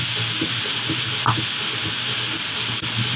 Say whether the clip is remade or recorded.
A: recorded